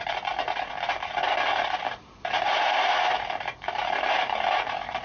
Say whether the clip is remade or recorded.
remade